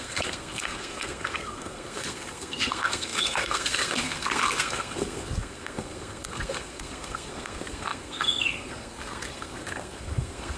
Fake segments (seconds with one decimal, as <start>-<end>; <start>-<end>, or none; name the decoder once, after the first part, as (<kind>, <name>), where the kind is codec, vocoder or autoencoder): 0.0-10.6 (codec, SNAC)